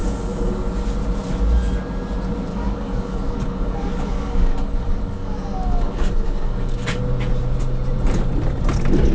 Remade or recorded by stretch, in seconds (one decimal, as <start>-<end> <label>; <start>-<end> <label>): 0.0-0.5 remade; 0.5-2.5 recorded; 2.5-7.0 remade; 7.0-9.1 recorded